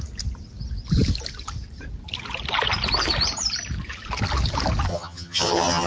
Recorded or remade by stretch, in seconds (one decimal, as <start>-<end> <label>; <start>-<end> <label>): 0.0-4.9 recorded; 4.9-5.9 remade